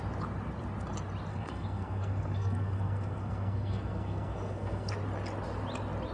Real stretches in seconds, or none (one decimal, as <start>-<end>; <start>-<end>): 0.0-1.3; 4.9-6.1

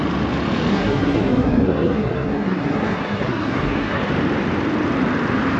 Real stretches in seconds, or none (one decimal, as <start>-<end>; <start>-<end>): 0.0-0.7; 4.1-5.6

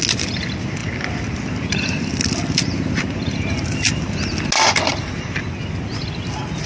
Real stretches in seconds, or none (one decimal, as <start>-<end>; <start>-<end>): 0.0-6.7

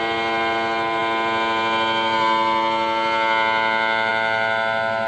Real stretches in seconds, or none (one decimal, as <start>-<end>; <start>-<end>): 0.0-5.1